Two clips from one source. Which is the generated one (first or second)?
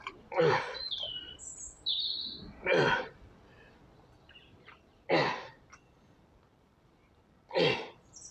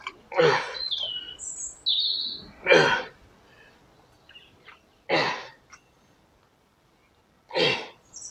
first